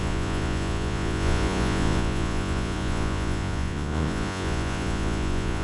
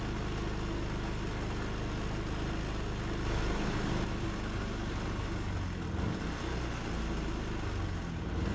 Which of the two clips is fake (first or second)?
first